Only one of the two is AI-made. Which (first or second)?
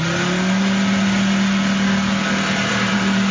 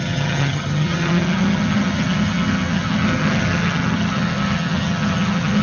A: second